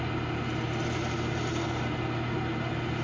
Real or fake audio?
real